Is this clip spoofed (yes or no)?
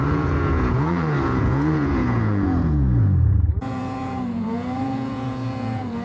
yes